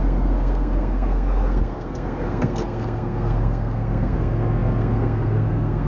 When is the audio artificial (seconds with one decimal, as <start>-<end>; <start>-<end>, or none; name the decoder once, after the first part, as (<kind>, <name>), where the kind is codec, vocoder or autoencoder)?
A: 0.0-5.9 (codec, SNAC)